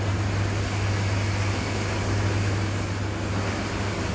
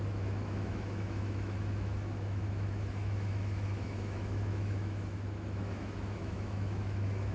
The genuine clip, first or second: first